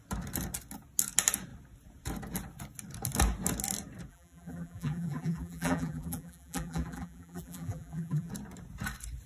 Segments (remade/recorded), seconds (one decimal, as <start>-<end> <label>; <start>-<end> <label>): 0.0-4.1 recorded; 4.1-8.3 remade; 8.3-9.3 recorded